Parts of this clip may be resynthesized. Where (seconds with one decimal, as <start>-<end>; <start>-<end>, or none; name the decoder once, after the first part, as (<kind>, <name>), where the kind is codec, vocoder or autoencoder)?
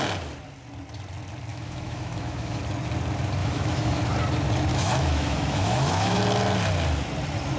1.5-2.6 (autoencoder, DAC-VAE); 3.4-4.0; 4.7-6.2